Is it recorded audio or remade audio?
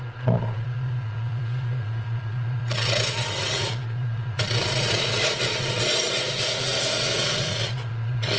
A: remade